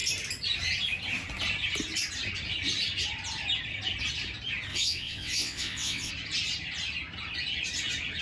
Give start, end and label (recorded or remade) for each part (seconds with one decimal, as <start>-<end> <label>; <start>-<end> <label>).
0.0-4.7 recorded; 4.7-6.1 remade; 6.1-8.2 recorded